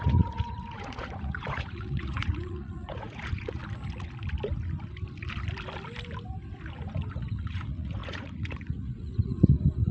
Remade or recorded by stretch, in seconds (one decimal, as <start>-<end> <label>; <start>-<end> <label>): 0.0-3.6 remade; 3.6-7.1 recorded; 7.1-9.9 remade